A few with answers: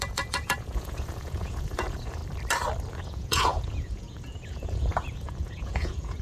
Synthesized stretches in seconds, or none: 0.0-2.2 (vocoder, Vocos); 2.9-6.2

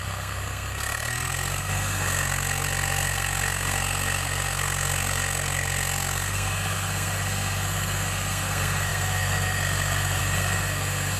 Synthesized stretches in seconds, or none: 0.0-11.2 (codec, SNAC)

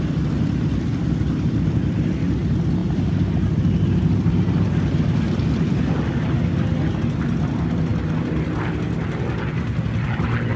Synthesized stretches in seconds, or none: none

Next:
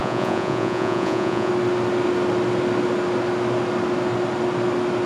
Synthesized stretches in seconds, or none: 0.0-1.5 (vocoder, Vocos)

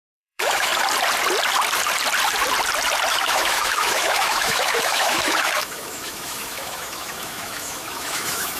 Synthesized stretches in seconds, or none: 0.0-0.7 (autoencoder, DAC-VAE); 3.1-8.6

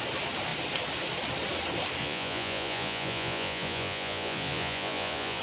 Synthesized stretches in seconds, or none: 2.0-5.4 (vocoder, Vocos)

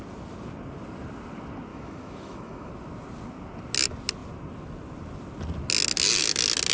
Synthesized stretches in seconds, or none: 1.7-2.7 (autoencoder, DAC-VAE)

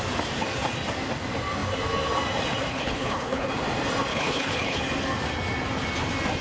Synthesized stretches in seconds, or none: 2.7-3.5 (codec, HILCodec); 4.1-4.8